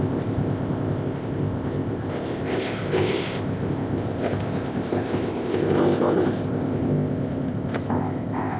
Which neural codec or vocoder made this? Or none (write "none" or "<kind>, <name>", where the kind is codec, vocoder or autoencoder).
codec, ZipCodec